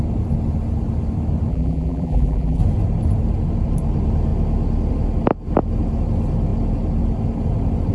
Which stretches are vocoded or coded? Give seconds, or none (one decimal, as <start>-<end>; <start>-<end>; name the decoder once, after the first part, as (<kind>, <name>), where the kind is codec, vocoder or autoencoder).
1.5-2.6 (vocoder, BigVGAN v2)